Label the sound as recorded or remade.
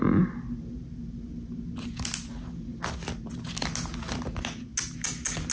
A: recorded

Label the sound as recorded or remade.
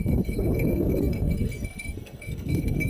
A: remade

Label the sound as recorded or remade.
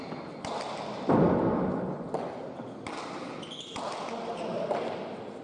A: recorded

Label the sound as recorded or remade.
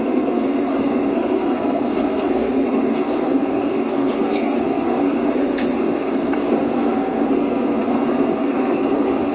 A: remade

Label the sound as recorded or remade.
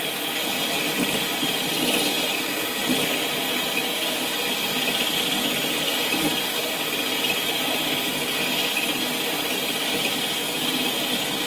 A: recorded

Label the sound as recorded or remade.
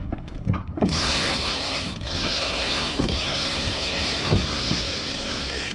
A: remade